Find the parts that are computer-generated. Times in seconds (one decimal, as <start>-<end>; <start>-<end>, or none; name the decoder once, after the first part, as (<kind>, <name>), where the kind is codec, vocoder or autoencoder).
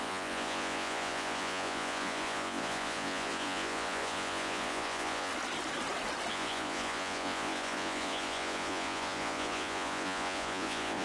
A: 0.0-5.3 (vocoder, Vocos); 6.3-11.0